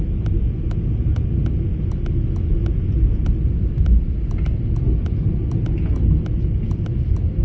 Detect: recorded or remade recorded